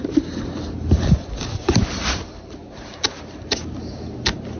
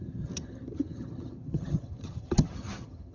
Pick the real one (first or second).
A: first